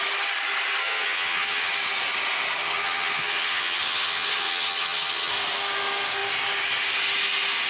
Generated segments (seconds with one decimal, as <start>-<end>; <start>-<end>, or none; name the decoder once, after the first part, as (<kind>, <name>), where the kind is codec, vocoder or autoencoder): 0.8-1.7 (vocoder, HiFi-GAN); 2.6-5.3